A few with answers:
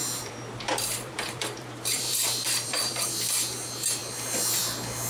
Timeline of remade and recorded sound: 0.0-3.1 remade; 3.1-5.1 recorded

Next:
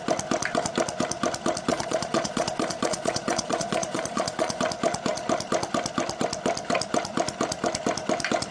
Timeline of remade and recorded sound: 0.0-1.7 recorded; 1.7-4.6 remade; 4.6-8.5 recorded

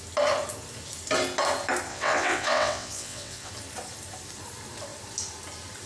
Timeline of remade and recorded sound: 0.0-1.9 recorded; 1.9-3.5 remade; 3.5-5.9 recorded

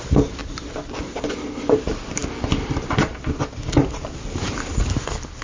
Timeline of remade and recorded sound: 0.0-0.4 recorded; 0.4-1.3 remade; 1.3-5.4 recorded

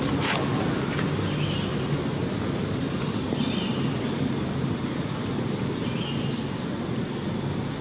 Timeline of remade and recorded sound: 0.0-7.8 recorded

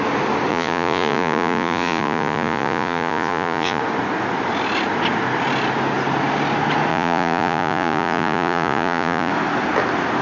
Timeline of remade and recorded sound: 0.0-0.5 recorded; 0.5-3.8 remade; 3.8-6.9 recorded; 6.9-9.3 remade; 9.3-10.2 recorded

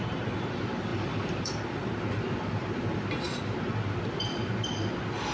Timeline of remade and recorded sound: 0.0-0.9 recorded; 0.9-2.0 remade; 2.0-2.6 recorded; 2.6-3.4 remade; 3.4-5.3 recorded